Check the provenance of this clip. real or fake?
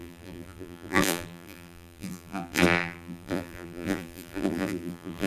fake